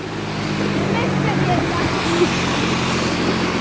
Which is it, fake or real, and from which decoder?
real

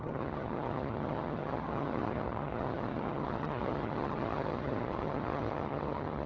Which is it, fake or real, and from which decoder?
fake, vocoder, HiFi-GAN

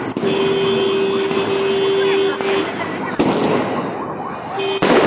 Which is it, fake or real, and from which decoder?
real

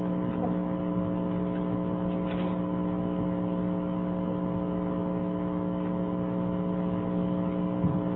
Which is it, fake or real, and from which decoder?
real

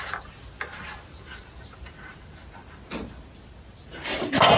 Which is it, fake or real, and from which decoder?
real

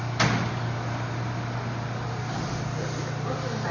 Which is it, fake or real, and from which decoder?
real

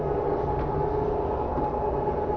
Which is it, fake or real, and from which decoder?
real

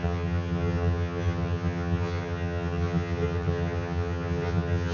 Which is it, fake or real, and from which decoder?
fake, vocoder, HiFi-GAN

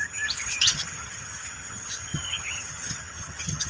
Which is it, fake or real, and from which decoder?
fake, vocoder, HiFi-GAN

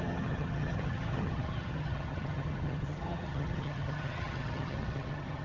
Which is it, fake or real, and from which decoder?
fake, vocoder, HiFi-GAN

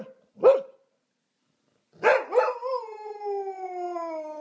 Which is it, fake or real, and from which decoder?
real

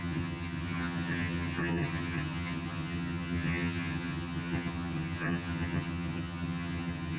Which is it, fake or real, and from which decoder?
fake, vocoder, HiFi-GAN